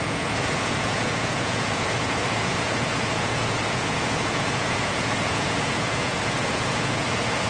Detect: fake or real fake